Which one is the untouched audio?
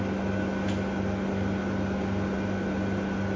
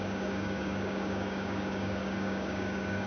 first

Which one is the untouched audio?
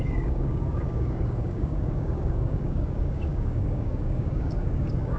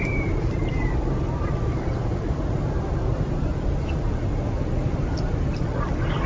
second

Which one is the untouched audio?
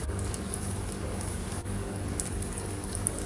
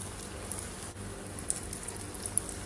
second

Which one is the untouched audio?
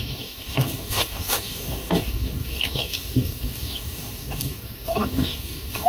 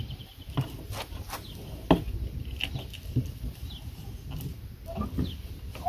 second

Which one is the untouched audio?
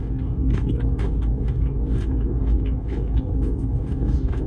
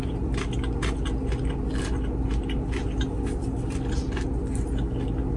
second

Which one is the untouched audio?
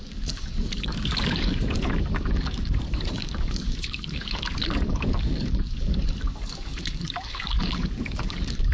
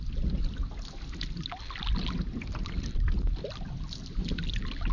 second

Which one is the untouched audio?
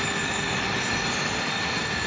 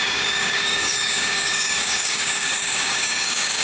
first